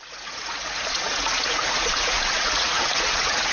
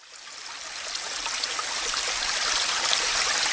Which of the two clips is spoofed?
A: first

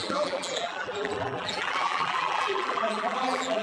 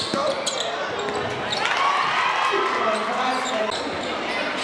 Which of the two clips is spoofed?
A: first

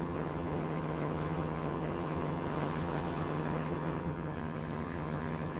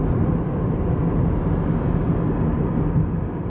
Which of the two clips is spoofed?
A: first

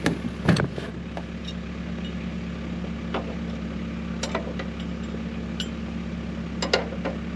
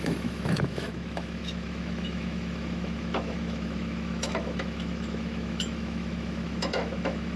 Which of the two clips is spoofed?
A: second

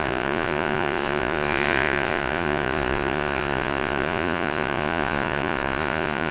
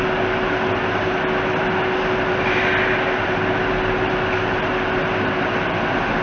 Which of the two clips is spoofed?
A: first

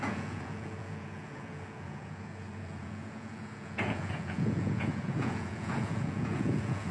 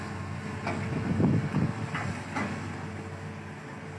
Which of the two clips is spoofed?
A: first